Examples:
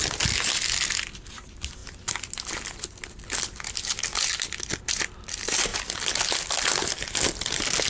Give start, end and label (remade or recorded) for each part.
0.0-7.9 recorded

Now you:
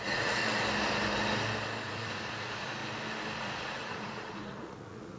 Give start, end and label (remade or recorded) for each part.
0.0-0.4 remade; 0.4-1.8 recorded; 1.8-2.8 remade; 2.8-3.4 recorded; 3.4-5.2 remade

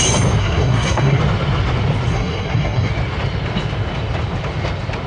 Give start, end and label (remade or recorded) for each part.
0.0-0.4 recorded; 0.4-1.2 remade; 1.2-2.1 recorded; 2.1-2.9 remade; 2.9-5.1 recorded

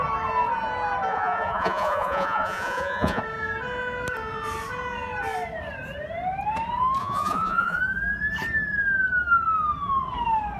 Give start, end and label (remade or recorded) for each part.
0.0-1.1 recorded; 1.1-3.2 remade; 3.2-7.0 recorded; 7.0-7.8 remade; 7.8-10.6 recorded

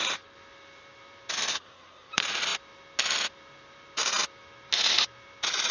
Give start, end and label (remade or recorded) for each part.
0.0-1.5 recorded; 1.5-2.1 remade; 2.1-5.7 recorded